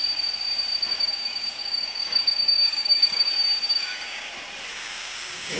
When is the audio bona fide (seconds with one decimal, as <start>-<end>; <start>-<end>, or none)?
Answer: 0.0-0.8; 3.3-3.7; 4.3-4.7